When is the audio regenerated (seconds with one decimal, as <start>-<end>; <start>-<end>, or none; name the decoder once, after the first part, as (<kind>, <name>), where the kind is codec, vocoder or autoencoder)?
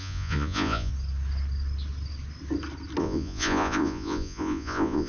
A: 0.0-0.9 (vocoder, Vocos); 3.0-5.1